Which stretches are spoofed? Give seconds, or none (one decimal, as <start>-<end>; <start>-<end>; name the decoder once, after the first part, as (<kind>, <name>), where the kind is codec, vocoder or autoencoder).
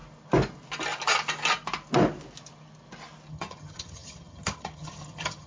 3.3-5.5 (vocoder, HiFi-GAN)